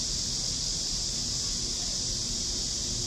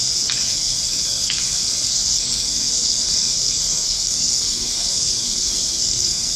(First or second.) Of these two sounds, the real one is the first